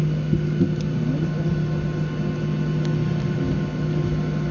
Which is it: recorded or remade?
recorded